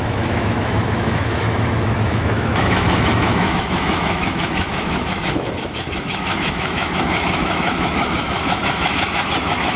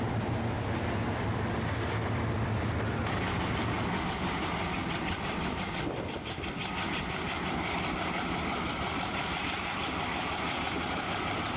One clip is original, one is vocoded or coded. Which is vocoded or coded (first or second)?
first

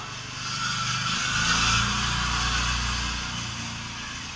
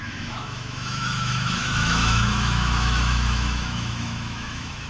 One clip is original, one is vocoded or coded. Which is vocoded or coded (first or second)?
second